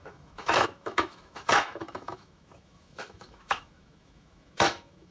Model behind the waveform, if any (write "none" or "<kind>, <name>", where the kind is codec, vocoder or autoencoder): autoencoder, DAC-VAE